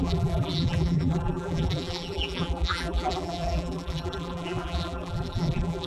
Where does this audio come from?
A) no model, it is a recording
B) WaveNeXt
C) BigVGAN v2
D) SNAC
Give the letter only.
C